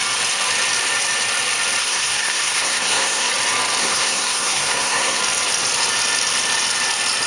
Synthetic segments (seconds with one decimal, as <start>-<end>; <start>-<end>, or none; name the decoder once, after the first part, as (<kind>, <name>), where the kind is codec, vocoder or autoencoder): 1.8-3.3 (codec, SNAC); 3.8-5.2